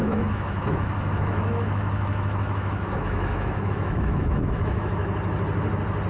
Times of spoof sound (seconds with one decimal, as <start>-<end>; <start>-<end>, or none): 0.0-5.0